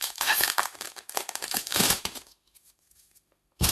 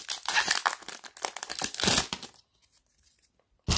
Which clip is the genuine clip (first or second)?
second